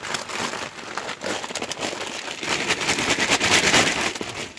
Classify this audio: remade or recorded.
recorded